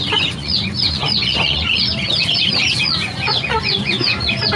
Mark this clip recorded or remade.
remade